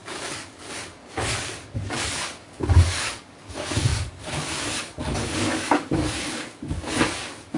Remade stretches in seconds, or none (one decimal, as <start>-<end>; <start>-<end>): 0.0-7.6